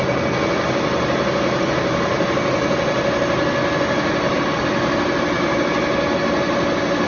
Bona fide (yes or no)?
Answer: yes